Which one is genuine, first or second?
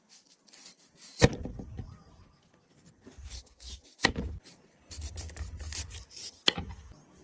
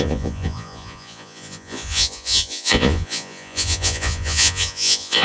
first